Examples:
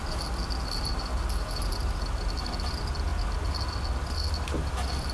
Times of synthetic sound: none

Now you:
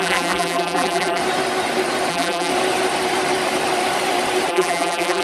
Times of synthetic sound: 0.0-1.2 (vocoder, BigVGAN v2); 2.1-2.5; 4.5-5.2

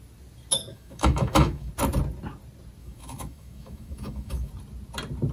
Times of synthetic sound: 0.7-1.7 (autoencoder, DAC-VAE); 2.8-4.5

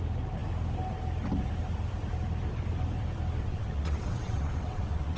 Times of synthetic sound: 3.4-5.2 (vocoder, WaveNeXt)